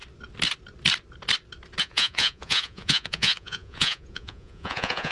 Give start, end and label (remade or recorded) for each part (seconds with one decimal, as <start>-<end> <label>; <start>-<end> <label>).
0.0-1.8 recorded; 1.8-5.1 remade